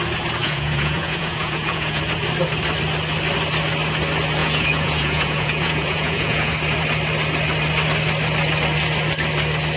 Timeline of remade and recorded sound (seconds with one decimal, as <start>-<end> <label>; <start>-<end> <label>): 0.0-0.4 recorded; 0.4-2.0 remade; 2.0-4.4 recorded; 4.4-6.5 remade; 6.5-9.8 recorded